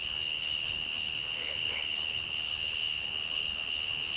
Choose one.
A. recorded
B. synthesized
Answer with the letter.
B